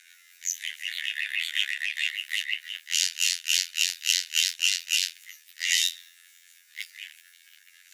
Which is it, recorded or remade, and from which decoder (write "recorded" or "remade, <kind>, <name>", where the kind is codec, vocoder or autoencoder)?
remade, vocoder, BigVGAN v2